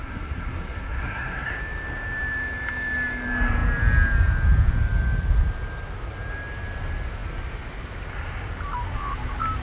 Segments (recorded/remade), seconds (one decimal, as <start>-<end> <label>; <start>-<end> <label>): 0.0-1.5 remade; 1.5-9.6 recorded